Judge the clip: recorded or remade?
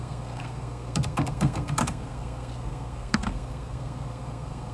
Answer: remade